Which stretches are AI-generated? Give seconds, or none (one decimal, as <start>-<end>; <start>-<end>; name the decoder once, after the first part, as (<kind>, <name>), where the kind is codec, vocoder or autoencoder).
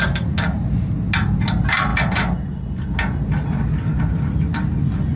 none